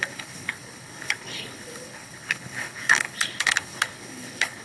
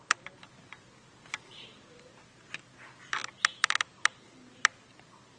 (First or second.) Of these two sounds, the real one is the second